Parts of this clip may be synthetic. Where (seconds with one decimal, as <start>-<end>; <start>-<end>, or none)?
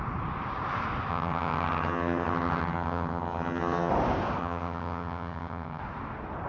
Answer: 1.1-3.9; 4.4-5.8